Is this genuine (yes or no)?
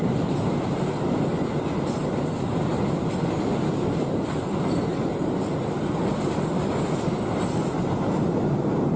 yes